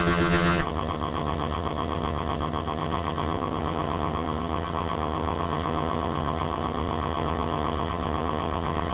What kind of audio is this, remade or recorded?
remade